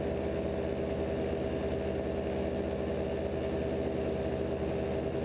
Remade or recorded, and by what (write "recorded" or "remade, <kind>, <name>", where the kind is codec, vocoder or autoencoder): recorded